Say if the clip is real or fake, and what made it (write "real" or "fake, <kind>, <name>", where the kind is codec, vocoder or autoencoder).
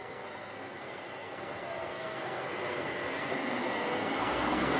fake, codec, SNAC